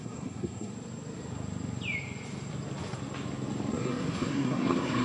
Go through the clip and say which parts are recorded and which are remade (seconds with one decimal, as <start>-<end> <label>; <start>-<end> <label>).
0.0-0.7 remade; 0.7-3.7 recorded; 3.7-5.0 remade